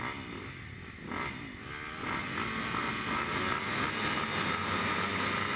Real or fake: real